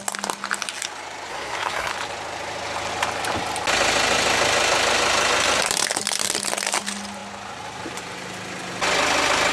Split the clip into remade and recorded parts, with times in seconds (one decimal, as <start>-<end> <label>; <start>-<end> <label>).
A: 0.0-1.3 recorded; 1.3-1.9 remade; 1.9-9.5 recorded